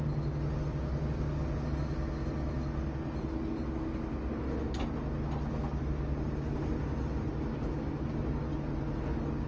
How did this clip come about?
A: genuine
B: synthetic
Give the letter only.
A